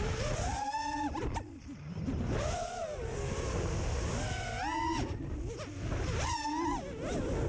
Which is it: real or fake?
real